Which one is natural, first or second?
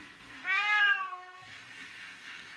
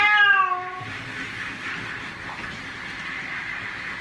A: second